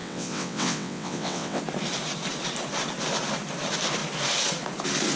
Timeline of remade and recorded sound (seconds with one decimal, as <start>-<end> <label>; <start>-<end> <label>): 0.0-1.6 remade; 1.6-5.2 recorded